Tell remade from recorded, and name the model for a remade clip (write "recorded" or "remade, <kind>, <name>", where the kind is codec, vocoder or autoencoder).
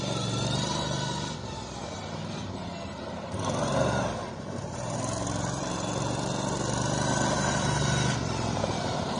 remade, vocoder, BigVGAN v2